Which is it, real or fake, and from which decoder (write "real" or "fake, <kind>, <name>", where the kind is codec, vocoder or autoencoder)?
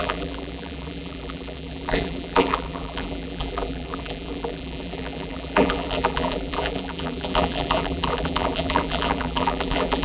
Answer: fake, vocoder, BigVGAN v2